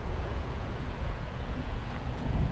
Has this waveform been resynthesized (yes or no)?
yes